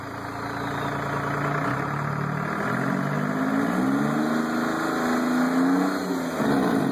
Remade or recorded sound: recorded